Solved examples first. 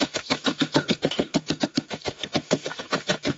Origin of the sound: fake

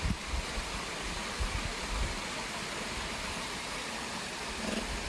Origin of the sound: real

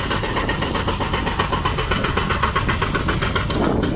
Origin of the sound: real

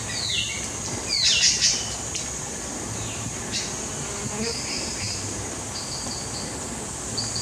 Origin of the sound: real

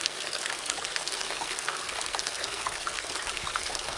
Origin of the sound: fake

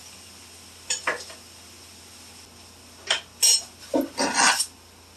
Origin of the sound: real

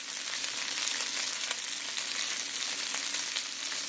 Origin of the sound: real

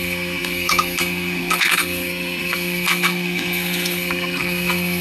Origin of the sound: fake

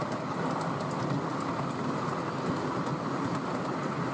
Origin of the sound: real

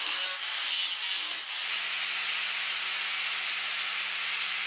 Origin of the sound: real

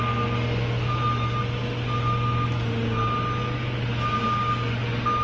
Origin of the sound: real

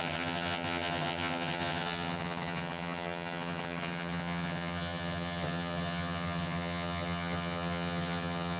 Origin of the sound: fake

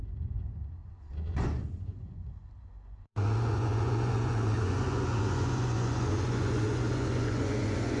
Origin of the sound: fake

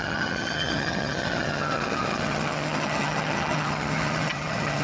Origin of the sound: fake